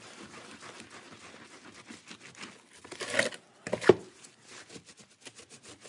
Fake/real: real